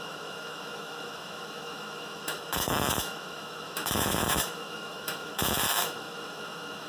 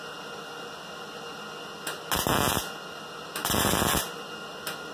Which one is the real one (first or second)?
second